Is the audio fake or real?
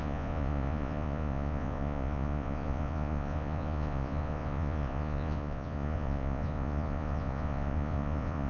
fake